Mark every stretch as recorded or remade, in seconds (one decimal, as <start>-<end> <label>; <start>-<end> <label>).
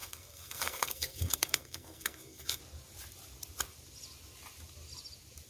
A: 0.0-2.6 remade; 2.6-5.5 recorded